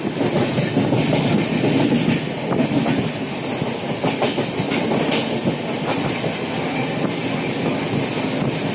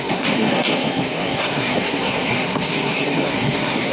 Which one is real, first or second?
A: first